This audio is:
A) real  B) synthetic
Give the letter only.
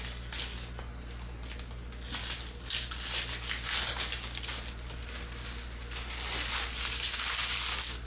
A